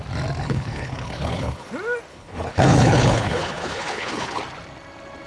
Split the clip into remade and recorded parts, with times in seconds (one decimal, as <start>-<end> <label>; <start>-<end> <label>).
0.0-0.4 recorded; 0.4-1.7 remade; 1.7-2.1 recorded; 2.1-4.4 remade; 4.4-5.3 recorded